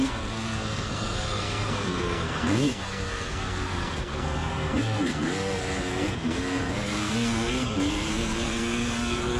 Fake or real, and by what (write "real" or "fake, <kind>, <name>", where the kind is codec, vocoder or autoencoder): fake, codec, SNAC